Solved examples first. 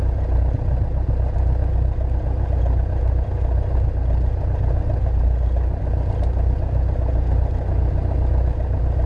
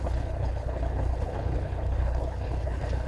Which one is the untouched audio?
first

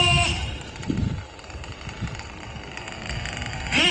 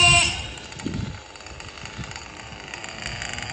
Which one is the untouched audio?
second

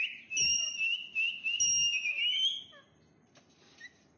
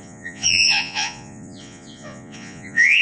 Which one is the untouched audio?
first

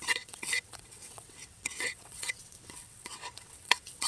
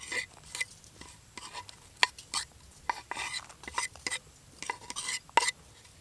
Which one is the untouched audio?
second